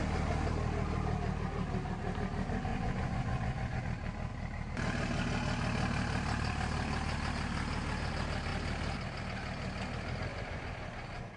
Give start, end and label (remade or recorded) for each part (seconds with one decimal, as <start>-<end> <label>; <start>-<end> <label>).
0.0-2.7 recorded; 2.7-3.8 remade; 3.8-10.3 recorded; 10.3-11.4 remade